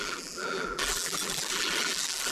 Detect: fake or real fake